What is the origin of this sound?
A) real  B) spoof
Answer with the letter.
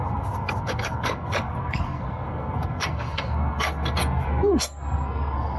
B